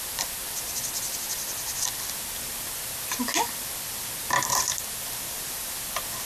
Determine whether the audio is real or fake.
real